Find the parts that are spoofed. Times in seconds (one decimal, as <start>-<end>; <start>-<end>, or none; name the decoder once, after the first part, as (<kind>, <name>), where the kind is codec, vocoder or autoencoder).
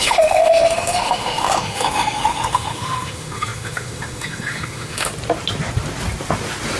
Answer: 0.0-5.1 (autoencoder, DAC-VAE)